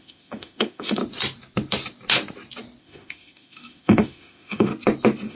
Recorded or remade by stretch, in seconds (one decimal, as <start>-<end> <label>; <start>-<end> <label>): 0.0-1.0 remade; 1.0-2.8 recorded; 2.8-4.7 remade; 4.7-5.3 recorded